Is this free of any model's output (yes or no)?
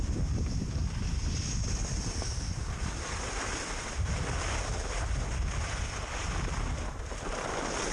yes